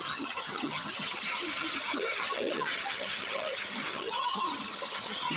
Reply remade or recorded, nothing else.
remade